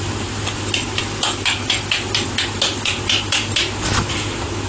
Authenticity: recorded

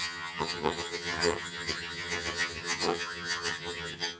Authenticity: remade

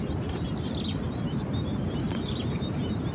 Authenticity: recorded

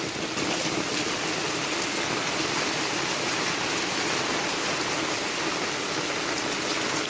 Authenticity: recorded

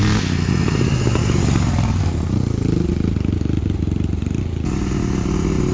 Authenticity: recorded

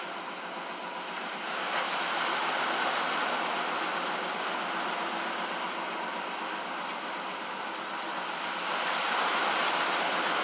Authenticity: recorded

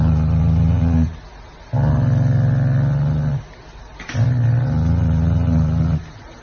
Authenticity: recorded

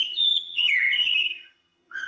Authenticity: remade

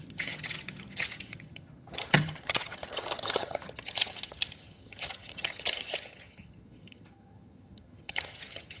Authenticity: remade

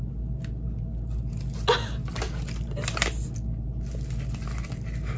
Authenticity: recorded